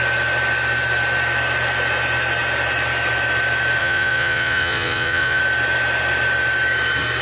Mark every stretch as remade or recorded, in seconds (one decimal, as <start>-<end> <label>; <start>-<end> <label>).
0.0-3.8 recorded; 3.8-5.4 remade; 5.4-7.2 recorded